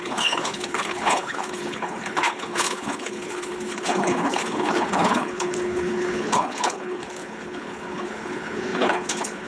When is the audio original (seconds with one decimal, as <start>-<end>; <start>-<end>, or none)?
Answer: none